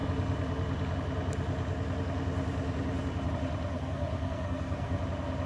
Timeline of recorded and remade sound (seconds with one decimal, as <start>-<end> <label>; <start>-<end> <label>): 0.0-3.7 recorded; 3.7-5.0 remade; 5.0-5.5 recorded